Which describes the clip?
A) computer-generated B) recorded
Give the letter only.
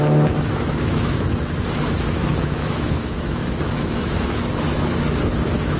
A